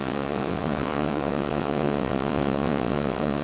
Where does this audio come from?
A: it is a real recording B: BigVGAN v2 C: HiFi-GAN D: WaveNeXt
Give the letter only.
D